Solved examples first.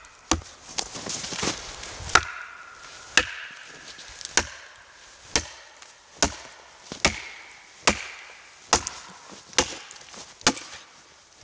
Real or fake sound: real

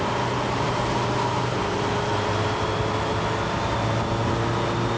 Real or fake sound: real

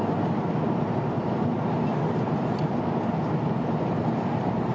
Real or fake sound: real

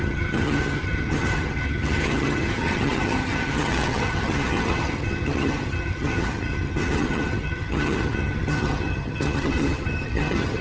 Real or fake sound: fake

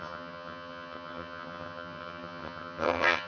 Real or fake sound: fake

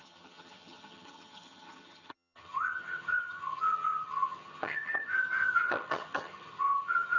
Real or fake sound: fake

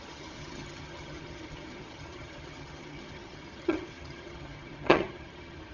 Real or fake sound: fake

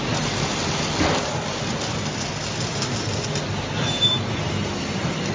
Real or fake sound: real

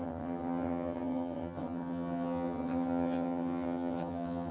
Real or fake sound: fake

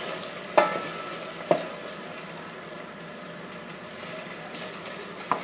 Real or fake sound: real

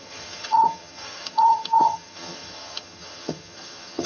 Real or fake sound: fake